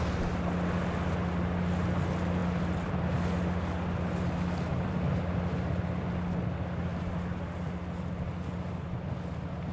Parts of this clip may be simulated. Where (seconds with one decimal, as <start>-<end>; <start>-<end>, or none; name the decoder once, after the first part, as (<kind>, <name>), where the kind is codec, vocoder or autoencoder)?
2.4-3.0 (vocoder, BigVGAN v2); 4.7-5.4